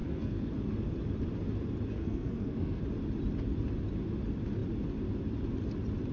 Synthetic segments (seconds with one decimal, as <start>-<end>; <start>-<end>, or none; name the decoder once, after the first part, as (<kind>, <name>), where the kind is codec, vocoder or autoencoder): 0.0-0.5 (codec, SNAC); 2.0-2.8